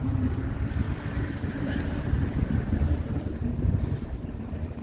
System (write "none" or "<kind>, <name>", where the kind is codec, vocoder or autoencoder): vocoder, BigVGAN v2